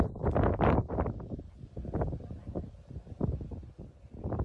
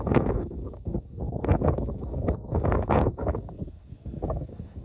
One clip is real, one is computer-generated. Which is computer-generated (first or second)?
second